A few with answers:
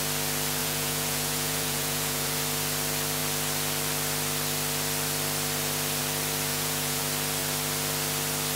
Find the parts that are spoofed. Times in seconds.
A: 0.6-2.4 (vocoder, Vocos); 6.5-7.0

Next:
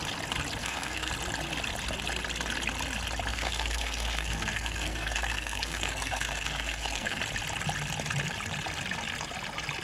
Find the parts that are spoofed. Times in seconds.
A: 0.6-1.1 (codec, SNAC); 3.3-7.2

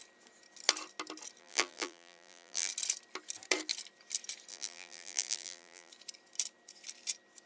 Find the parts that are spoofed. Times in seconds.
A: 1.4-2.7 (vocoder, BigVGAN v2); 4.5-5.9

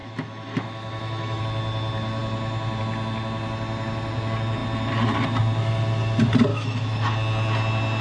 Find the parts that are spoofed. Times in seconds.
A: 0.0-1.4 (autoencoder, DAC-VAE); 6.5-7.1

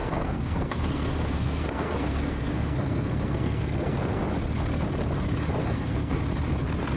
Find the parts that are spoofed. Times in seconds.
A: 0.0-4.2 (codec, SNAC); 5.6-6.2

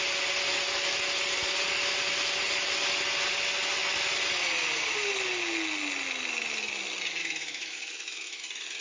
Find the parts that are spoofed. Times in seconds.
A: 7.2-8.4 (autoencoder, DAC-VAE)